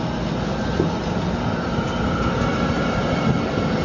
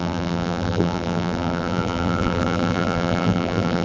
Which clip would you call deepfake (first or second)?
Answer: second